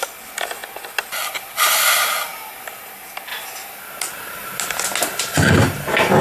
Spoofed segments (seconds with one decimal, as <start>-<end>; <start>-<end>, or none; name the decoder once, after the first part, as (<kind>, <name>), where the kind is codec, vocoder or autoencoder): none